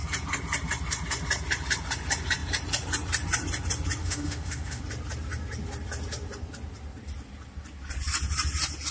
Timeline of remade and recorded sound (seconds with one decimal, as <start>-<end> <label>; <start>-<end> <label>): 0.0-4.0 recorded; 4.0-4.8 remade; 4.8-8.9 recorded